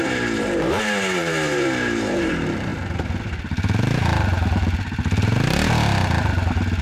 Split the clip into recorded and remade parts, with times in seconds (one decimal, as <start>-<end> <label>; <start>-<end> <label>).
0.0-2.7 remade; 2.7-6.8 recorded